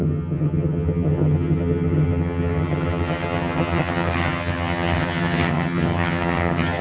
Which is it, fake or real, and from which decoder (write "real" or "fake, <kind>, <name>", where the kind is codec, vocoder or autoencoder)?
fake, vocoder, HiFi-GAN